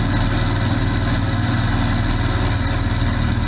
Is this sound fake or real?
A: real